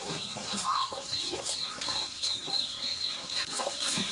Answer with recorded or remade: remade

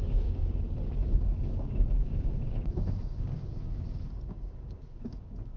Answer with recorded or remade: remade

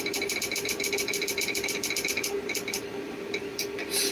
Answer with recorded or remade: recorded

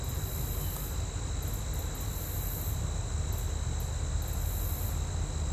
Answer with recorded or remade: recorded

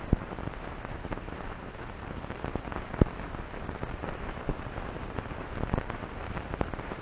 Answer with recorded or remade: remade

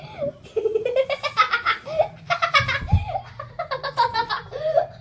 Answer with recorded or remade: recorded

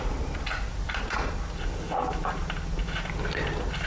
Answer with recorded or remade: recorded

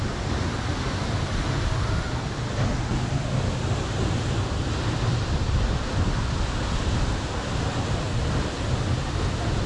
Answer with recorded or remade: recorded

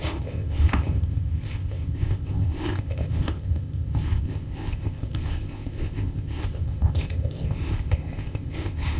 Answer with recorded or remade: remade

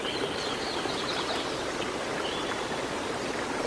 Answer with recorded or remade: remade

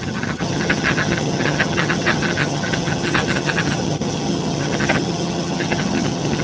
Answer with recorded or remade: remade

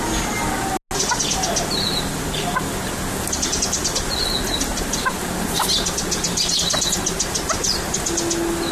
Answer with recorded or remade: recorded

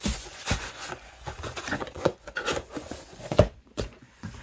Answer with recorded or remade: remade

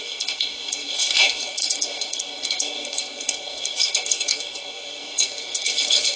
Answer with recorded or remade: remade